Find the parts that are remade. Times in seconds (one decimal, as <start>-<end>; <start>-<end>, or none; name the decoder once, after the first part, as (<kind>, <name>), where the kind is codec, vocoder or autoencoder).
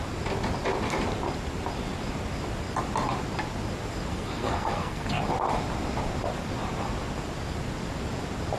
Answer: 4.1-5.2 (codec, SNAC)